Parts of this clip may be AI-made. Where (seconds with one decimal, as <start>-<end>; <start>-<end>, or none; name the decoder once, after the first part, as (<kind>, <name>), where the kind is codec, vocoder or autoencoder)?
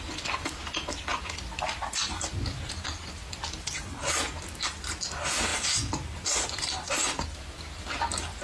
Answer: 5.5-6.9 (vocoder, BigVGAN v2)